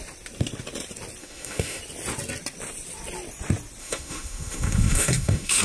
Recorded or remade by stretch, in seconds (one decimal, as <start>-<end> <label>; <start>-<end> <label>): 0.0-1.2 recorded; 1.2-1.8 remade; 1.8-3.8 recorded; 3.8-5.6 remade